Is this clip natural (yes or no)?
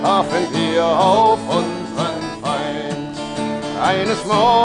yes